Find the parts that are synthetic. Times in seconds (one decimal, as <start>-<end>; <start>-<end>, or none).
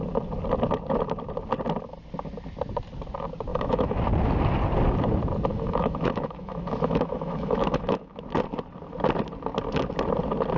3.5-4.0; 5.5-8.2